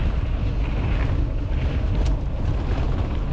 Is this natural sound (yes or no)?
yes